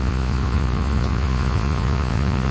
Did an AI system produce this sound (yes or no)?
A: yes